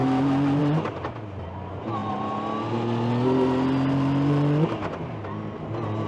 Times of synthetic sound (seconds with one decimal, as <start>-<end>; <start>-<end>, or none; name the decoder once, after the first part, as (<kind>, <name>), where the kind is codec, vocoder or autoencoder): none

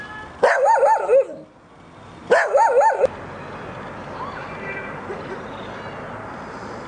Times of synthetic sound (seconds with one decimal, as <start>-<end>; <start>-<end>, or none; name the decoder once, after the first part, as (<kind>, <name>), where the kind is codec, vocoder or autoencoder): none

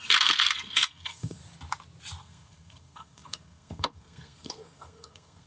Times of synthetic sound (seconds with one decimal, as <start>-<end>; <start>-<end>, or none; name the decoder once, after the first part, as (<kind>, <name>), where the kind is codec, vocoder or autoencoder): 0.0-1.4 (codec, SNAC); 2.2-5.5

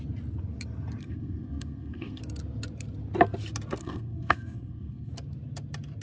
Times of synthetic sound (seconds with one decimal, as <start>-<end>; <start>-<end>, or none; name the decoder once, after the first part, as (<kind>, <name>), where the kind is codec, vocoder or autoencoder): 1.0-2.2 (codec, SNAC); 3.8-5.1

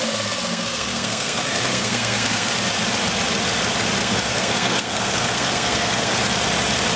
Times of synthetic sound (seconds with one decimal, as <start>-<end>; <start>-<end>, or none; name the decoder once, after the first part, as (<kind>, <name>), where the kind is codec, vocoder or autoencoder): 0.5-2.5 (codec, SNAC); 4.0-6.1

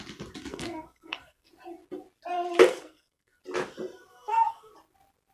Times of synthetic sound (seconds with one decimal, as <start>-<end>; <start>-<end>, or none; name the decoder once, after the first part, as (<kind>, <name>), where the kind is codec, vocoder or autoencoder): 0.5-1.5 (codec, SNAC); 2.7-3.4; 4.1-4.7

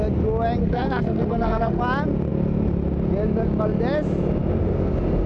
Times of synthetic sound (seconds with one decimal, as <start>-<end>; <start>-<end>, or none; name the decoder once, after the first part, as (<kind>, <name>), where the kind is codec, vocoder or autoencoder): 0.6-1.8 (codec, SNAC)

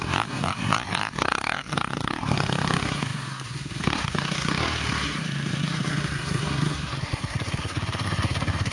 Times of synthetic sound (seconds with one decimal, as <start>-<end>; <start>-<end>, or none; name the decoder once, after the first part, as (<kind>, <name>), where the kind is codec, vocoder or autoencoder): 0.0-8.7 (codec, SNAC)